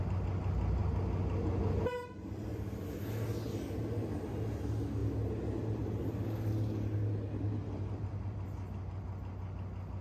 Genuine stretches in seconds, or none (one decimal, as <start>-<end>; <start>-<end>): 0.0-10.0

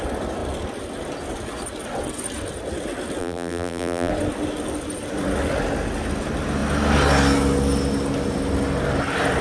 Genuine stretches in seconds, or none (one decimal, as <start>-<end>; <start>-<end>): 0.0-3.2; 4.1-9.4

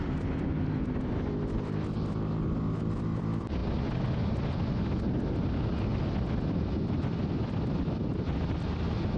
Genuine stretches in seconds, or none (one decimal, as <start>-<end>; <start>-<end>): 0.0-9.2

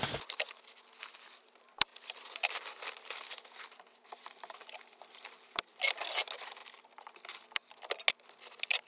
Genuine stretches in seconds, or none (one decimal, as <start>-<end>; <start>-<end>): 6.6-8.1

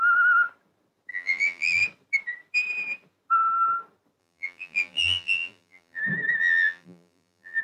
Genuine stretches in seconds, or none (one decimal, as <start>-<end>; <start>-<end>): 0.0-1.1; 1.8-4.2; 6.0-6.4

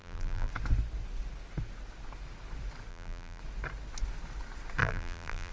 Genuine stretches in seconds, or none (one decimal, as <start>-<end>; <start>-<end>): 0.5-2.9; 3.4-4.8